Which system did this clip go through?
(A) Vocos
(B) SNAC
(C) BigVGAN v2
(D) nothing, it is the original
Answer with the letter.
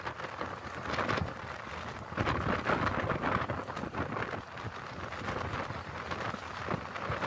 D